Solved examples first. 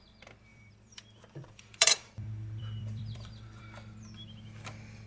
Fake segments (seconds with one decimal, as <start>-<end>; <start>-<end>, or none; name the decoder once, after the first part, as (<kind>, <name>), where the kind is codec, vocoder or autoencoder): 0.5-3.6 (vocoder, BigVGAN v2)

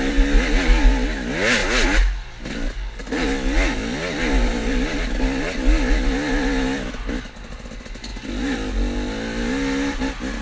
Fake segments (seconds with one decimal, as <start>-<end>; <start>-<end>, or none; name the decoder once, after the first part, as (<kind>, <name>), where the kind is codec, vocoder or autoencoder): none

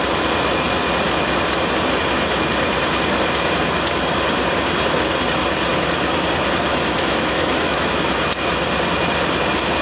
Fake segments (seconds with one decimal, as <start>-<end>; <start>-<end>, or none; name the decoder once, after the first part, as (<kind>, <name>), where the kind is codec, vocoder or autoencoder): 6.7-8.0 (autoencoder, DAC-VAE)

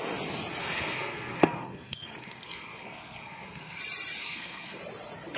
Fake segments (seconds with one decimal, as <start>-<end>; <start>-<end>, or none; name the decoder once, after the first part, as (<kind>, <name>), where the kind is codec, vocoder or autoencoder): 0.6-3.8 (codec, SNAC); 4.2-4.8